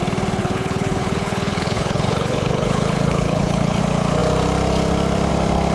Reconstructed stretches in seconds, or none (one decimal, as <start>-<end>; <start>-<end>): 0.4-3.8